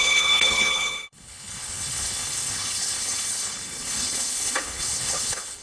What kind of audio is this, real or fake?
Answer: fake